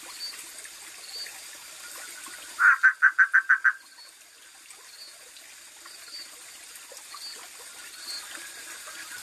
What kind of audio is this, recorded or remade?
recorded